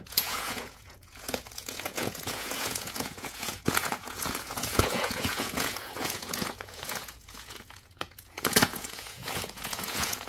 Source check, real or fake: fake